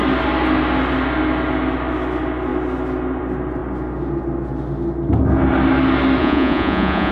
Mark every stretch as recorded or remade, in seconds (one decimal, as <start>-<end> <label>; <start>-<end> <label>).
0.0-6.2 recorded; 6.2-7.1 remade